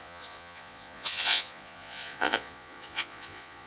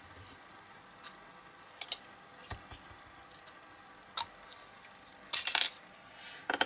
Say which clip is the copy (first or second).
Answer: first